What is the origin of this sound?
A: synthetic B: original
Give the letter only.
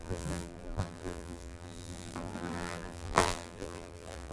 A